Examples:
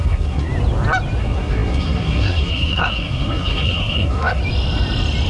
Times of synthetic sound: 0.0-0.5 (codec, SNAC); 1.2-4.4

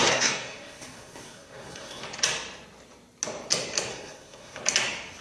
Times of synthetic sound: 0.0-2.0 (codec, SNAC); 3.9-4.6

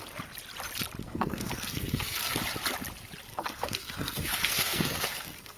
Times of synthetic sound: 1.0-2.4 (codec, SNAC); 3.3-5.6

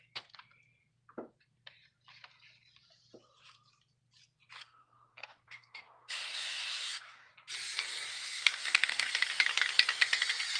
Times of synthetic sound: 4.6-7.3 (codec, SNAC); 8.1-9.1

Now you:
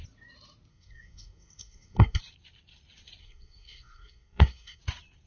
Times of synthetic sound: 0.7-2.2 (codec, SNAC); 3.2-4.8